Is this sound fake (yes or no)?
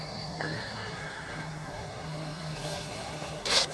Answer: yes